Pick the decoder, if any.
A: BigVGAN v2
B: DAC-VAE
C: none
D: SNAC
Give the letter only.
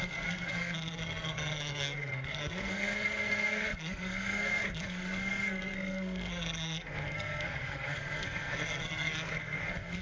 D